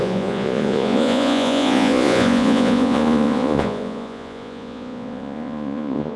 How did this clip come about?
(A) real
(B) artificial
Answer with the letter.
B